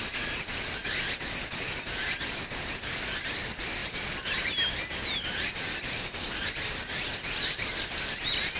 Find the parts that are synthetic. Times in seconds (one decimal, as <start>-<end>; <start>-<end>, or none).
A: none